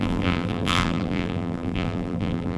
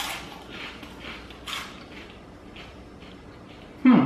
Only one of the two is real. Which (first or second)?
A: second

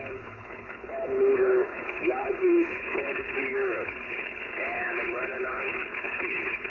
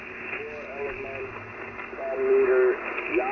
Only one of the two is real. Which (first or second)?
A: second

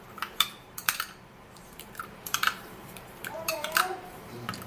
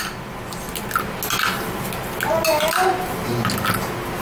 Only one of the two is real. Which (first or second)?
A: second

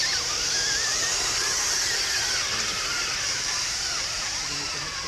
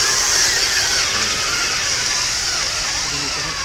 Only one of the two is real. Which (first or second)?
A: second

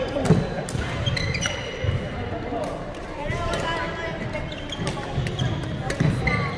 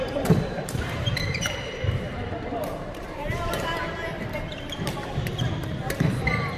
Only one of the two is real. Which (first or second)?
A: first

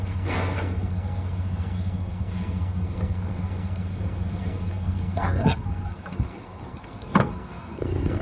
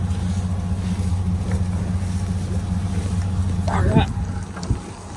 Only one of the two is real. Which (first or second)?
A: second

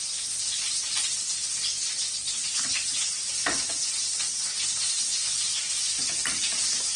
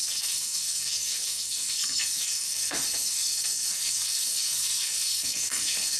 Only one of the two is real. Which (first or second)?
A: first